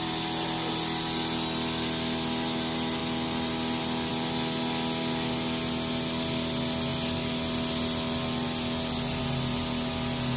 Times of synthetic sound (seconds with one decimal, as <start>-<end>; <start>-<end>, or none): none